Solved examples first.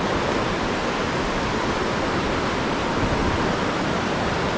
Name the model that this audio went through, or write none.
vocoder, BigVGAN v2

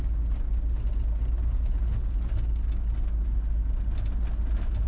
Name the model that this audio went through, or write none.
none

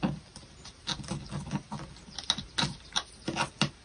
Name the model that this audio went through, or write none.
none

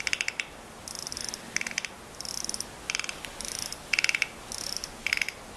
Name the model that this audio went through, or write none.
none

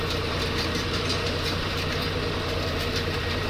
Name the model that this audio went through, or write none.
vocoder, BigVGAN v2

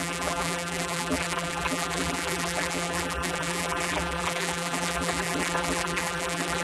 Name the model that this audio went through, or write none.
vocoder, BigVGAN v2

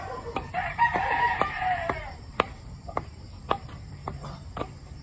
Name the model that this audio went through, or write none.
vocoder, BigVGAN v2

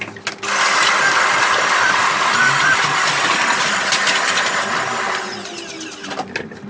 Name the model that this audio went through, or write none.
none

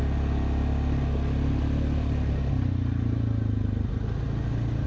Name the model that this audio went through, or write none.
none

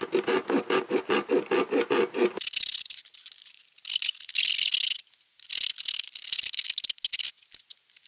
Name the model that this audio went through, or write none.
none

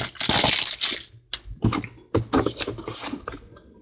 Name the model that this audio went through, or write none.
none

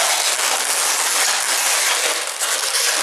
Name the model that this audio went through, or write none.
none